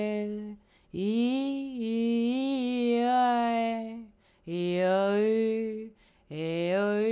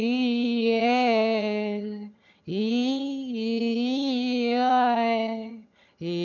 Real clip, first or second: first